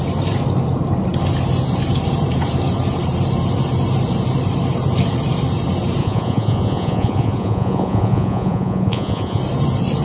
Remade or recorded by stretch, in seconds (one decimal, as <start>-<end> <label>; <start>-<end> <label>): 0.0-6.0 recorded; 6.0-9.4 remade; 9.4-10.0 recorded